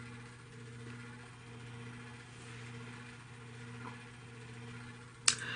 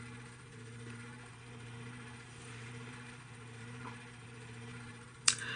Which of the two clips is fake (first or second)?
second